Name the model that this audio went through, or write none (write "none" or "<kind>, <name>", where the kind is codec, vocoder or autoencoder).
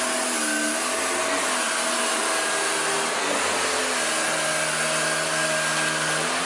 none